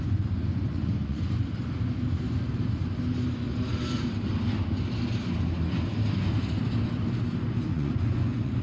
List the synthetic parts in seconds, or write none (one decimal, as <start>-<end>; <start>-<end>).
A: 0.5-1.2; 7.7-8.6